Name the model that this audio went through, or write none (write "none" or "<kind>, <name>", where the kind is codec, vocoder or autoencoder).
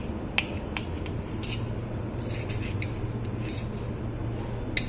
none